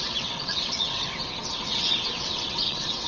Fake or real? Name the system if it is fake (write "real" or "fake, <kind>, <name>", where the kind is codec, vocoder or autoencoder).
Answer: fake, vocoder, WaveNeXt